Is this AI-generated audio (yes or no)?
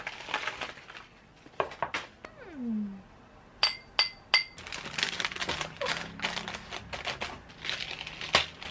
no